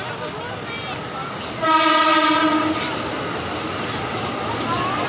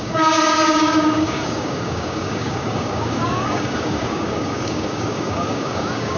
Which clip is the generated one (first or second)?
second